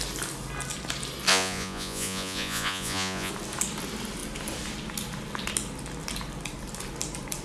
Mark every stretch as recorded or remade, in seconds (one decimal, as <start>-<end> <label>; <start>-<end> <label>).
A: 0.0-1.3 recorded; 1.3-3.3 remade; 3.3-7.4 recorded